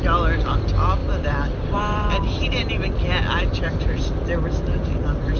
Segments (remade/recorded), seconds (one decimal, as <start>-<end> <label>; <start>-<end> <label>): 0.0-5.4 recorded